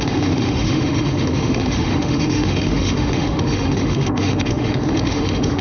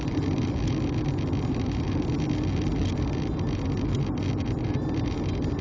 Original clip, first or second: second